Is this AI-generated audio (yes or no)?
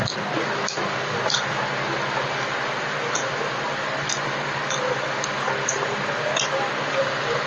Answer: no